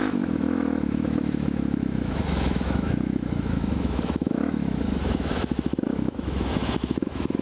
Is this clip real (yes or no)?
no